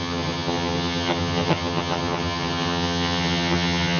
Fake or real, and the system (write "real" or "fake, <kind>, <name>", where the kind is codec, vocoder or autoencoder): fake, vocoder, HiFi-GAN